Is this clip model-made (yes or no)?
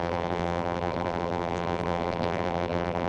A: yes